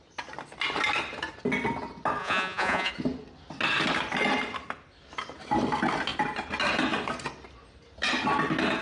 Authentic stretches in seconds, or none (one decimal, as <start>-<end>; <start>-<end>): 0.0-2.2; 2.9-8.8